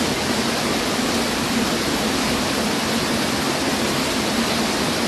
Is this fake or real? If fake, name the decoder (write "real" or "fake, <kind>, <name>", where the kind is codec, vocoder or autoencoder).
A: real